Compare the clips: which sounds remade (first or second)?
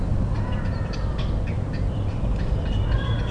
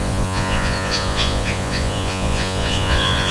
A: second